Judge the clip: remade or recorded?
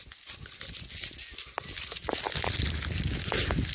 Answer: recorded